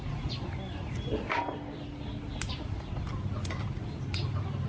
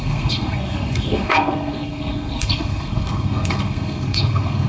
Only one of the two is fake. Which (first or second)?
second